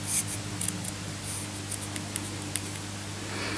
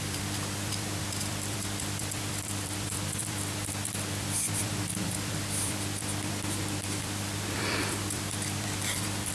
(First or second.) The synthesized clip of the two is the second